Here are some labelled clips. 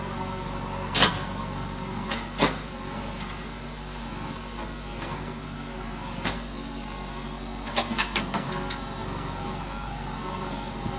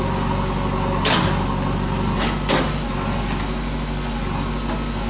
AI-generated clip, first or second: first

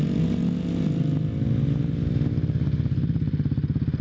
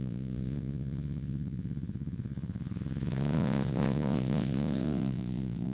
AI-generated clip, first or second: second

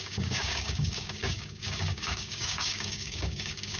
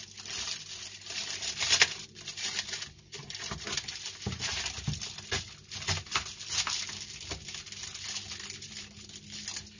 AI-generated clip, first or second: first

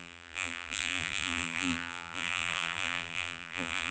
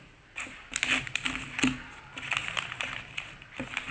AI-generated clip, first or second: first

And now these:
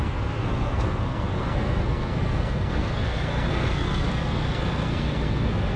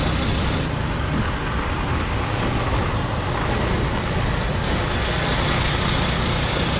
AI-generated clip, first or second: first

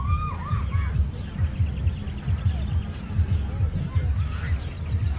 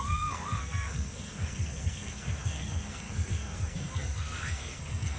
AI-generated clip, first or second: second